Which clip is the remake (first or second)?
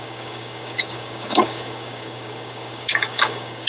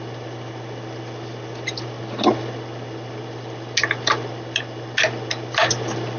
first